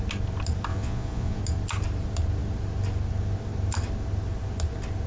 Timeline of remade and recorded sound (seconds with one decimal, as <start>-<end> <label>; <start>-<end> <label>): 0.0-0.7 recorded; 0.7-1.4 remade; 1.4-5.1 recorded